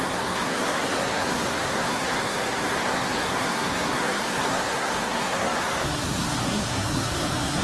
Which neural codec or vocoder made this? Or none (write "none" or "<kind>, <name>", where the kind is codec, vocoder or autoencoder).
codec, SNAC